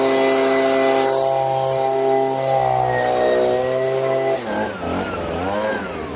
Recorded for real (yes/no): yes